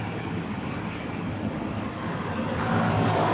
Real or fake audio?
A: fake